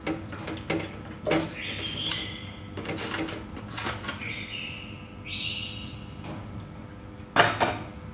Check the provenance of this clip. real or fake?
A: real